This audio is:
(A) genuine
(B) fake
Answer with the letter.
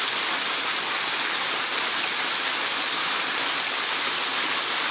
A